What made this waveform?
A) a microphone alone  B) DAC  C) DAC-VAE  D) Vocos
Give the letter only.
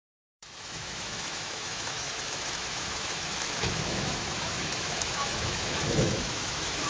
C